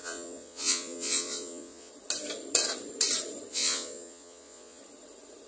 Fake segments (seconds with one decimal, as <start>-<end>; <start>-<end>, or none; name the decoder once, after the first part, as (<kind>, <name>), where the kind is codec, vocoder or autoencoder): 0.0-1.9 (vocoder, Vocos); 3.5-4.8